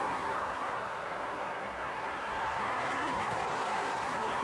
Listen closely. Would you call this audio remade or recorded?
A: remade